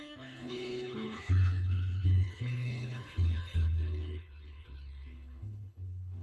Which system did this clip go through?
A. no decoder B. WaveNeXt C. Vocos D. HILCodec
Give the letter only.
D